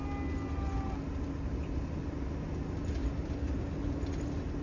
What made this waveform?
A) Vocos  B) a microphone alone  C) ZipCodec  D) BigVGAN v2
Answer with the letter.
B